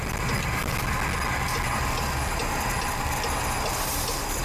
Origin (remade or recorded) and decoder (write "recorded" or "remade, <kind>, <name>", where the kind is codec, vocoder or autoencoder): recorded